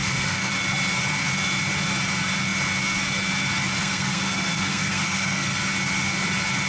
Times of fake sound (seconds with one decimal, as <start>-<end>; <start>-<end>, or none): 0.0-0.5; 3.8-5.6